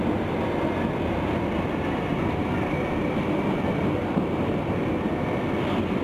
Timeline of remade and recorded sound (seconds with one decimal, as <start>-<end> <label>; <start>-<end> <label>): 0.0-2.1 recorded; 2.1-4.0 remade; 4.0-6.0 recorded